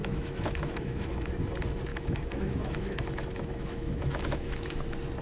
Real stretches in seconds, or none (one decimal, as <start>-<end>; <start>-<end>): 1.3-1.9; 4.8-5.2